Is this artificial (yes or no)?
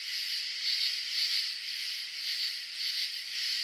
yes